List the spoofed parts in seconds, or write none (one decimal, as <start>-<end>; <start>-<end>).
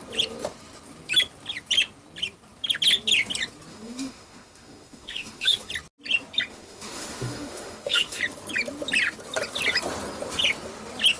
3.7-5.7; 6.5-8.2